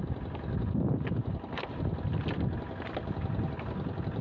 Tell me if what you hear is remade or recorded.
recorded